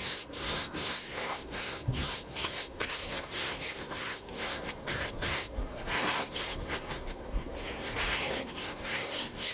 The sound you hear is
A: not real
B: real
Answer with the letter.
A